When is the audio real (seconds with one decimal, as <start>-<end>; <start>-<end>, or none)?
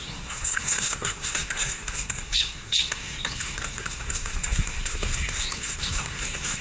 none